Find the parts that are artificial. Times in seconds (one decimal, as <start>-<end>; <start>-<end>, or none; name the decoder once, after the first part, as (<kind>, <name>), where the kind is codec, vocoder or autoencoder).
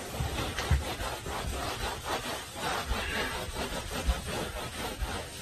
4.7-5.4 (autoencoder, DAC-VAE)